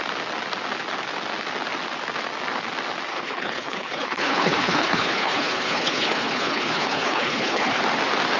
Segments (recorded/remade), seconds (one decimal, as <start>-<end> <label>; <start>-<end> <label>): 0.0-3.1 recorded; 3.1-7.8 remade; 7.8-8.4 recorded